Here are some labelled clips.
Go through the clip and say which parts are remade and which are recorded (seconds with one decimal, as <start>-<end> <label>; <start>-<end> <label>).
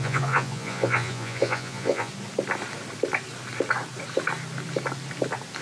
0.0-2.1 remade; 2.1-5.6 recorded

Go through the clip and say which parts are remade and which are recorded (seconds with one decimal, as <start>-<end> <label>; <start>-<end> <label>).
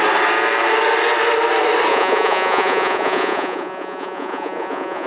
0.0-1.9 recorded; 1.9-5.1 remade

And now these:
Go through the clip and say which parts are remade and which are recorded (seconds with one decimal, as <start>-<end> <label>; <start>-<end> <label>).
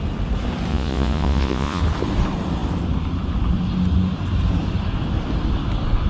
0.0-0.7 recorded; 0.7-1.8 remade; 1.8-6.1 recorded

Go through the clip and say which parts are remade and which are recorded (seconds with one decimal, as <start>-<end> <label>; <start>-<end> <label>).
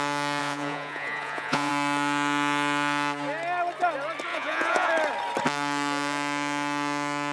0.0-0.4 recorded; 0.4-1.7 remade; 1.7-4.3 recorded; 4.3-4.9 remade; 4.9-7.3 recorded